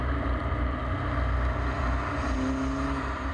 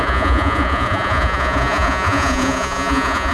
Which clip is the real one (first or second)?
first